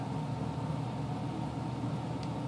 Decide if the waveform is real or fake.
real